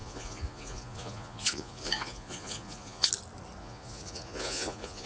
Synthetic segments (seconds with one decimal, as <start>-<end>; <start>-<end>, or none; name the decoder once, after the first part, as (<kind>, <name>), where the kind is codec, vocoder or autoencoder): 0.0-3.1 (vocoder, Vocos); 3.6-5.1